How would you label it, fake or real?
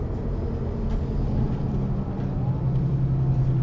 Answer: real